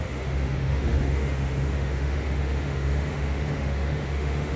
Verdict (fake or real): fake